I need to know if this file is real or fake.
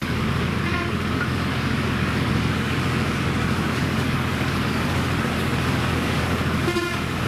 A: fake